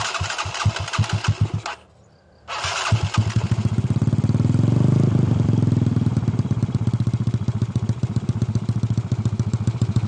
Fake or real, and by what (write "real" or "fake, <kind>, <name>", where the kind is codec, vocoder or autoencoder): real